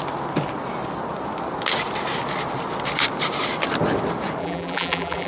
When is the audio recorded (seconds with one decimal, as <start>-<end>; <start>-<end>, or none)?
0.0-4.4